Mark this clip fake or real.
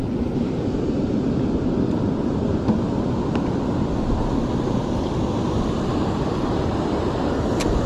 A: real